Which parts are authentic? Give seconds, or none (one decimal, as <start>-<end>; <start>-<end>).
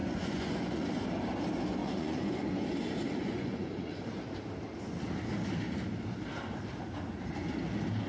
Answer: 0.9-1.8; 2.7-3.2; 4.0-8.1